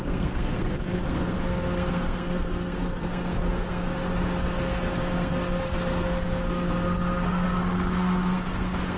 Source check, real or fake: fake